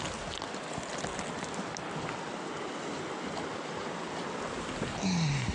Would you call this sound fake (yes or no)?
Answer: no